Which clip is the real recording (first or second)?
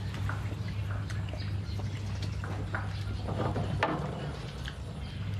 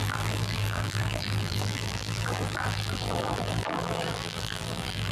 first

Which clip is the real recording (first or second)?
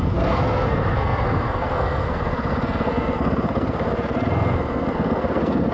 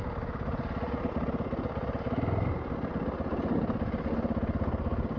second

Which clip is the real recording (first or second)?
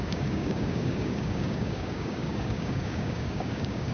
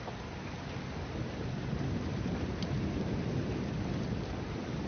second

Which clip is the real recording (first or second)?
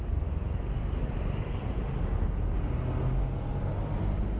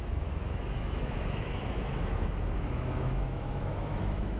first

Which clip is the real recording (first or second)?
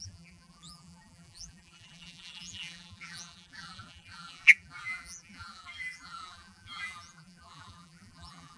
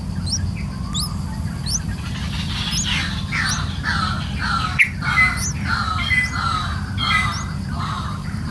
second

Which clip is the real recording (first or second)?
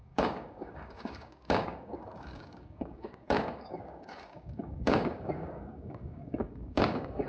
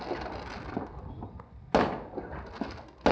second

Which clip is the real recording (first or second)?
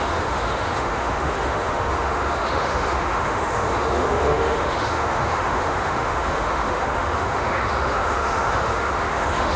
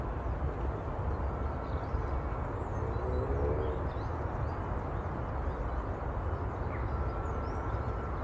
second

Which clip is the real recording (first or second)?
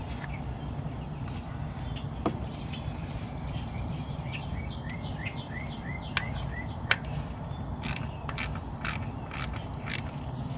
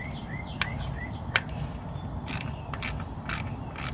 first